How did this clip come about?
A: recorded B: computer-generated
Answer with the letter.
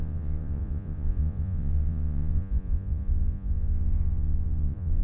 B